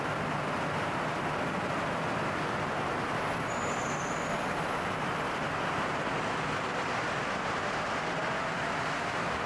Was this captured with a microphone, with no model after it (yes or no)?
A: yes